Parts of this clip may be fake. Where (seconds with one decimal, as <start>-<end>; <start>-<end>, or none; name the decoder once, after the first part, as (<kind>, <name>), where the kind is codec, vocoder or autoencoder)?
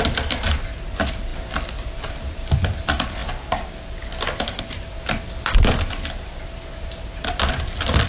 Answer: none